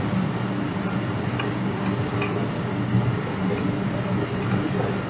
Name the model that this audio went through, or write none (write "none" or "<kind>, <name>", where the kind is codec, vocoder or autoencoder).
none